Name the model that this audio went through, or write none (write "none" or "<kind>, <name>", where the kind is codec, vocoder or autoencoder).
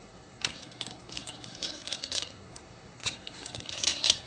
codec, SNAC